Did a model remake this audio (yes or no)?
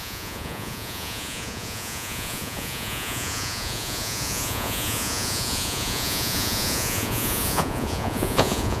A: yes